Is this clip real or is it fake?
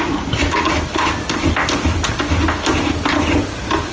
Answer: real